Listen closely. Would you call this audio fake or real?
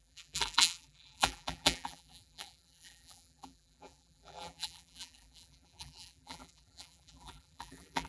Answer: fake